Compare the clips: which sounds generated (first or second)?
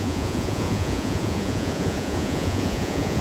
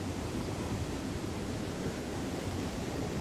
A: first